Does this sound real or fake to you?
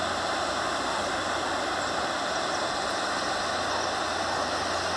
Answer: real